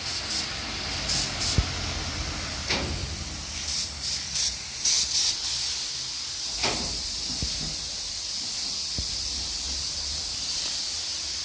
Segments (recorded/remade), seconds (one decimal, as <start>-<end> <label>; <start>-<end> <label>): 0.0-11.4 recorded